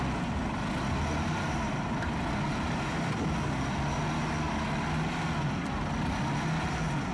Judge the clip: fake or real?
real